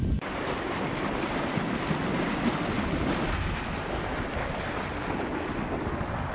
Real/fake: real